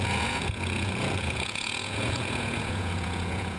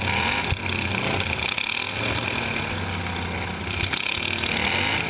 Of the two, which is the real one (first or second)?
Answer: second